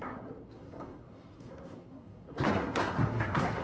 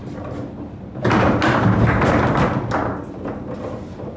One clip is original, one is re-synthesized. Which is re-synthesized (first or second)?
first